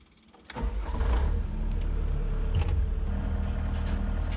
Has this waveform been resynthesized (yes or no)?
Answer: no